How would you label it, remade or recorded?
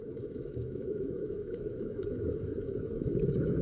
remade